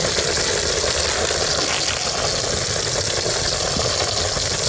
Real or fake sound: real